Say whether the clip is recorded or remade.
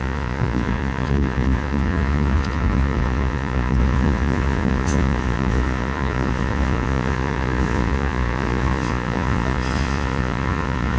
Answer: remade